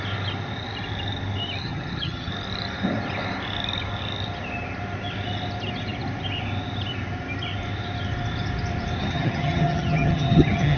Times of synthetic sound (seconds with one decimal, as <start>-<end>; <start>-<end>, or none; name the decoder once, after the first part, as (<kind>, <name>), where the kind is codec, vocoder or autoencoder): 1.6-2.3 (vocoder, HiFi-GAN); 9.0-10.8